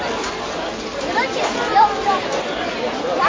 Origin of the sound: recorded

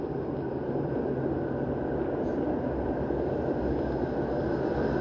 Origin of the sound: recorded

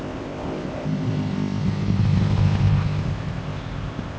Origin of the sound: remade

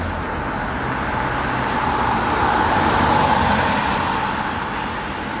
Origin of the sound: recorded